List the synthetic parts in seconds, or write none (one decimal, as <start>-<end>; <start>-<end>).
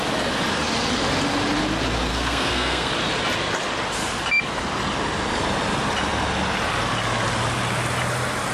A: 2.1-2.9